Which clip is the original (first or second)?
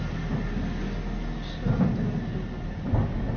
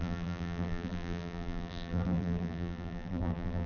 first